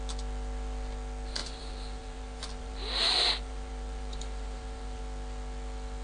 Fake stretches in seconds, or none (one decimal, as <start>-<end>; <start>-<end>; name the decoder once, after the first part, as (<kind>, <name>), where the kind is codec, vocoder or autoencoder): 1.4-5.0 (vocoder, BigVGAN v2)